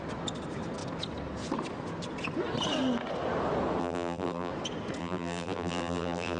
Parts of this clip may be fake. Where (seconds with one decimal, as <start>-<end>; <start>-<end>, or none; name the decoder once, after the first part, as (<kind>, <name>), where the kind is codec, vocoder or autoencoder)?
3.8-4.5 (vocoder, BigVGAN v2); 5.0-6.4